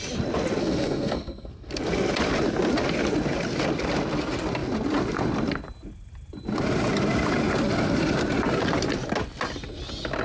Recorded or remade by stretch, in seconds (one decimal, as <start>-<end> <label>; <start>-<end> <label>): 0.0-0.6 recorded; 0.6-1.7 remade; 1.7-10.2 recorded